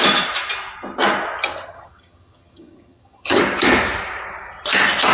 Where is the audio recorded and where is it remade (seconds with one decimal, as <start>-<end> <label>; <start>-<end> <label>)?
0.0-1.5 recorded; 1.5-3.4 remade; 3.4-5.1 recorded